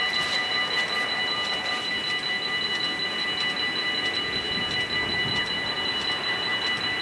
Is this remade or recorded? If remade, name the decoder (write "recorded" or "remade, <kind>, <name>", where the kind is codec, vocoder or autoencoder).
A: recorded